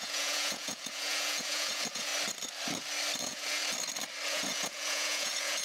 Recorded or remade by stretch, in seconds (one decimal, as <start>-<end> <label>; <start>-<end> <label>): 0.0-2.1 remade; 2.1-3.2 recorded; 3.2-3.6 remade; 3.6-4.3 recorded; 4.3-5.6 remade